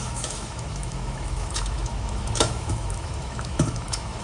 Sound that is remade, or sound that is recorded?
remade